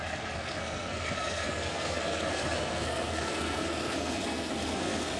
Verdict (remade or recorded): remade